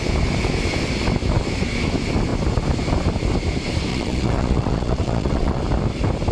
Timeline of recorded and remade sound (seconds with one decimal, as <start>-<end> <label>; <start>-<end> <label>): 0.0-3.9 recorded; 3.9-5.6 remade; 5.6-6.3 recorded